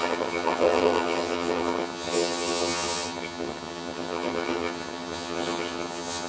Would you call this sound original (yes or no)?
no